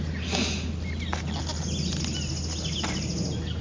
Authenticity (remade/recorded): recorded